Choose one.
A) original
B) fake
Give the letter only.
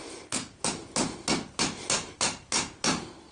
A